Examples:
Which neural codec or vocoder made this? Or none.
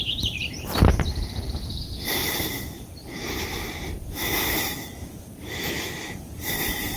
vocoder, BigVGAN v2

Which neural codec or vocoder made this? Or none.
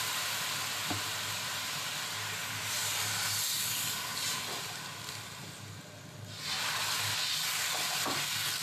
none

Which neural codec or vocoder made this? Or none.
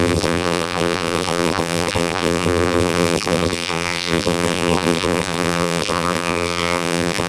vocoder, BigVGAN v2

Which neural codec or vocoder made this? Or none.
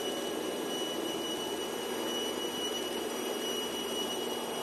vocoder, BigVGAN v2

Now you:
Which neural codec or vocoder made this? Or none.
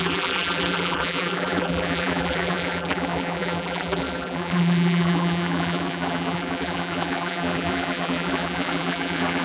vocoder, BigVGAN v2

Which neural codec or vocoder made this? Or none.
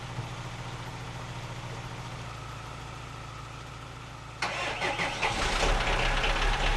none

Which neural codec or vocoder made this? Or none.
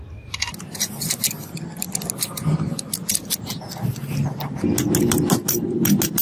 none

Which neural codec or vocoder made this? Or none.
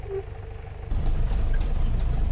none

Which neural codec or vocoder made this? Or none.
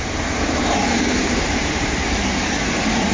vocoder, BigVGAN v2